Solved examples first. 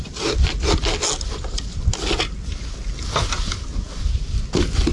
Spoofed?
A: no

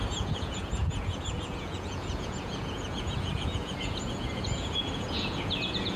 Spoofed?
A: yes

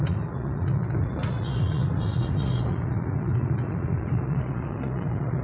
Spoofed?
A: yes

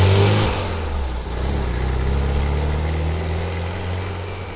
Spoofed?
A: no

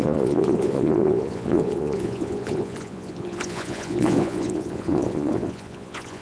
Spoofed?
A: yes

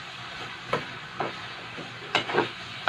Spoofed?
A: yes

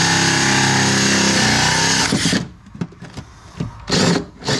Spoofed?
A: no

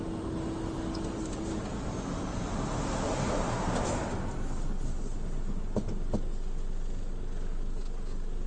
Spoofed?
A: no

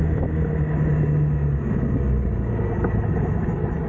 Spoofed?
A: no